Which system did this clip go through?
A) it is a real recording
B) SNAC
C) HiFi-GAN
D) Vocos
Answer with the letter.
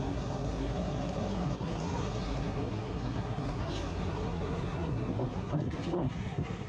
B